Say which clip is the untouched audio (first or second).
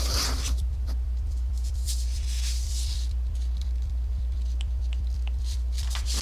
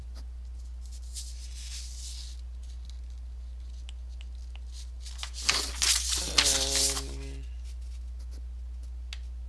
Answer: second